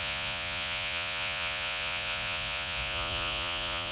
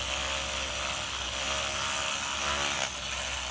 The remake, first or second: first